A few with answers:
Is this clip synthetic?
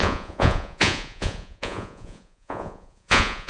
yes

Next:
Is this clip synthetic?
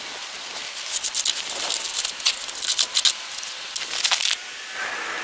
no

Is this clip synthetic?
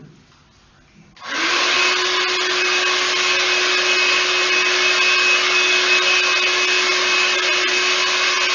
no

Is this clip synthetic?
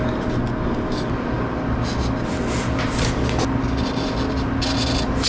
no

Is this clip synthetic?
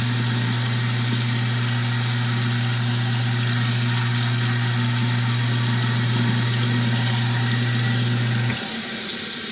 no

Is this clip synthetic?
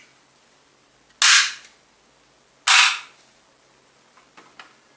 no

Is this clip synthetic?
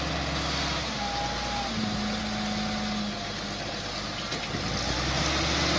no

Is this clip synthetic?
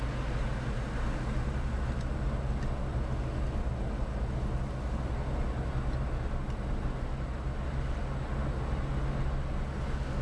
no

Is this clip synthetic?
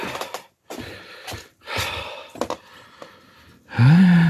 no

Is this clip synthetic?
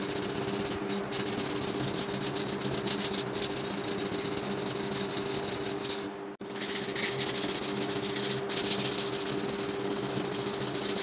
no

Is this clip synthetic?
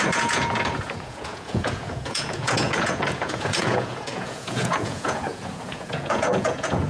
yes